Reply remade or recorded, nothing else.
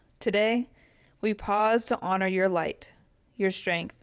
remade